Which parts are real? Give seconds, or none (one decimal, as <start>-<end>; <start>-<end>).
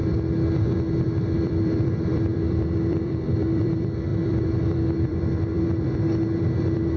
none